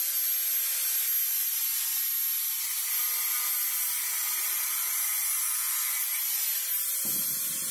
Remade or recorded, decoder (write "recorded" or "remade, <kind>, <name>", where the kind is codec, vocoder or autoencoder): recorded